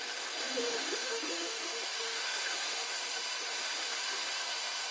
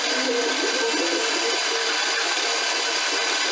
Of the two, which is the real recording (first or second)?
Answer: second